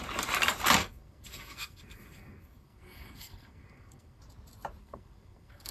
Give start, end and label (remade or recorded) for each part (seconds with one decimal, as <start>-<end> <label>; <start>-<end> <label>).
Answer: 0.0-0.8 recorded; 0.8-4.2 remade; 4.2-4.8 recorded; 4.8-5.7 remade